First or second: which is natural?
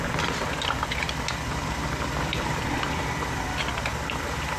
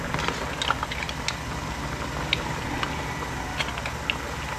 second